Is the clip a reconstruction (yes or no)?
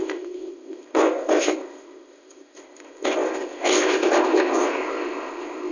yes